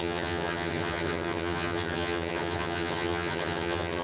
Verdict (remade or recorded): remade